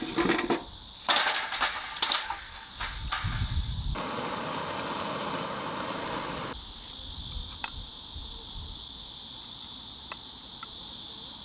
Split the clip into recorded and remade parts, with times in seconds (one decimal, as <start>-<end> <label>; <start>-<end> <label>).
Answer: 0.0-2.2 recorded; 2.2-2.7 remade; 2.7-11.4 recorded